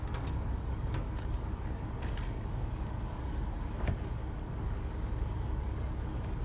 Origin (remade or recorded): remade